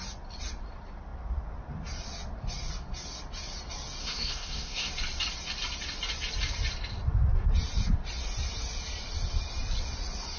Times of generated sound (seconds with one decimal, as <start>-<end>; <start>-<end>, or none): 4.0-4.9